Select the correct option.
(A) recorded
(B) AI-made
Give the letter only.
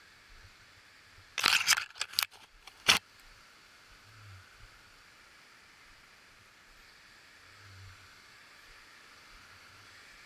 A